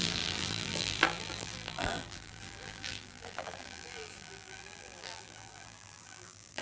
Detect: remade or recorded remade